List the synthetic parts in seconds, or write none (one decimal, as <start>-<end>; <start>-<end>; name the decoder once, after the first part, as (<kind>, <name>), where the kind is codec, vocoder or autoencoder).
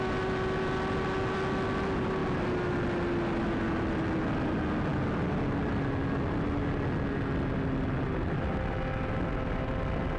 none